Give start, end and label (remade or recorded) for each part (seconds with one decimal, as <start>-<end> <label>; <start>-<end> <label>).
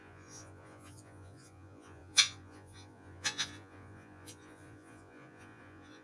0.0-6.0 remade